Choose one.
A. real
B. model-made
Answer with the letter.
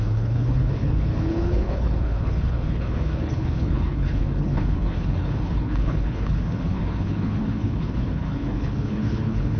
B